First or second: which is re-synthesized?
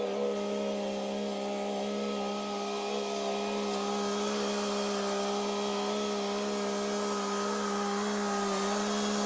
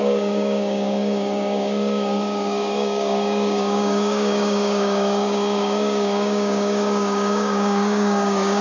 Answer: second